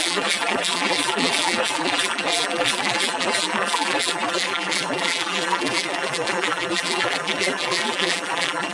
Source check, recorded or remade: remade